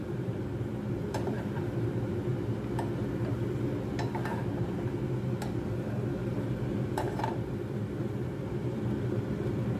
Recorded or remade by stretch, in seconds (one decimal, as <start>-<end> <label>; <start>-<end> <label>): 0.0-2.3 remade; 2.3-6.7 recorded; 6.7-9.8 remade